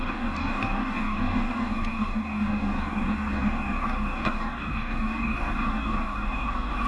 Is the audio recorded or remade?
remade